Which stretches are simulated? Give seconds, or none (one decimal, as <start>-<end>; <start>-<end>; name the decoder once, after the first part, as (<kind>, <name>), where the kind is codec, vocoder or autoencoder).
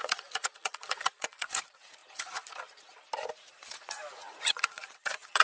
0.0-2.0 (vocoder, Vocos); 4.1-5.4